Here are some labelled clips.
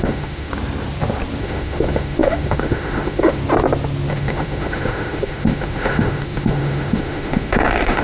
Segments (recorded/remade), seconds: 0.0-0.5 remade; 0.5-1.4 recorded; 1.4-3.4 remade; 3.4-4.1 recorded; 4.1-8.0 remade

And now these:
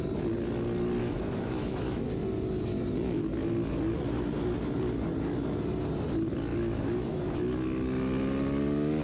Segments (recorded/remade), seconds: 0.0-1.0 recorded; 1.0-2.1 remade; 2.1-6.5 recorded; 6.5-7.4 remade; 7.4-9.0 recorded

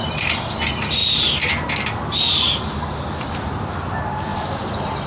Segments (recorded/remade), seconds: 0.0-1.0 remade; 1.0-2.7 recorded; 2.7-4.3 remade; 4.3-5.1 recorded

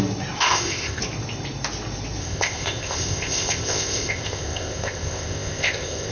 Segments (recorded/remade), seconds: 0.0-0.4 recorded; 0.4-1.0 remade; 1.0-2.2 recorded; 2.2-6.1 remade

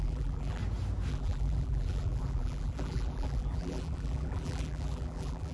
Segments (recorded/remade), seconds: 0.0-0.6 remade; 0.6-1.1 recorded; 1.1-5.5 remade

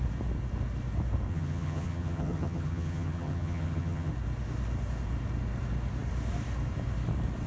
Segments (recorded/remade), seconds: 0.0-1.3 recorded; 1.3-4.1 remade; 4.1-7.5 recorded